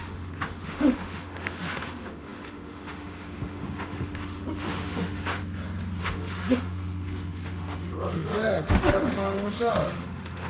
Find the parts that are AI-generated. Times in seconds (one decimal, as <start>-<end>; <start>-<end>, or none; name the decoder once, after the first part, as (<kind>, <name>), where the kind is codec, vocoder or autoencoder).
0.0-5.4 (autoencoder, DAC-VAE); 6.0-10.5